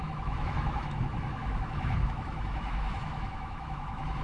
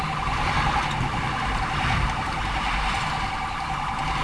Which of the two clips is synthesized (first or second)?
first